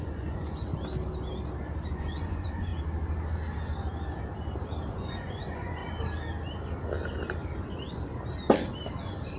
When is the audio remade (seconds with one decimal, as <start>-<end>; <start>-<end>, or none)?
0.0-0.6; 1.9-2.7; 4.9-5.8